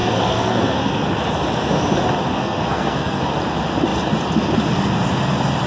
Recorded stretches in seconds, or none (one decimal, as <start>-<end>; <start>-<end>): 1.1-2.4; 3.2-5.7